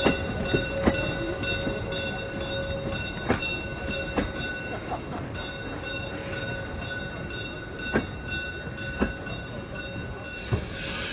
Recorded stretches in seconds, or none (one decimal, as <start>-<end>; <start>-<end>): 0.0-11.1